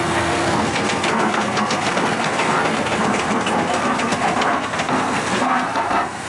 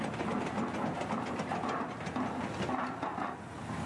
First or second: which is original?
second